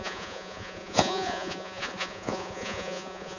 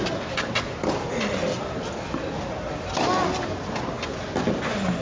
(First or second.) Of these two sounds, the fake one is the first